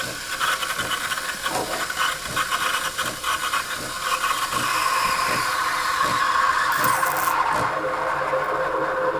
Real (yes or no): yes